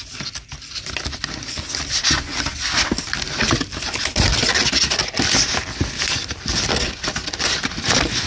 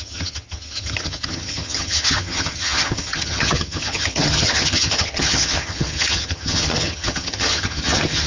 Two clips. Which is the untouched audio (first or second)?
first